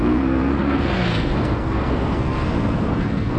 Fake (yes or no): yes